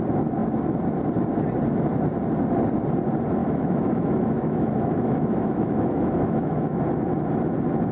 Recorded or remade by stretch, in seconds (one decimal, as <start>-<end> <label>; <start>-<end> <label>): 0.0-3.4 recorded; 3.4-6.8 remade; 6.8-7.9 recorded